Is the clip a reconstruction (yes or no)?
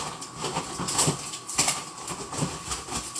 no